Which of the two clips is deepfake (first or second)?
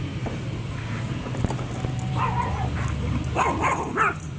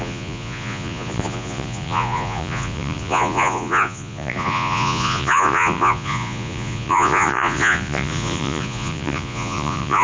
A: second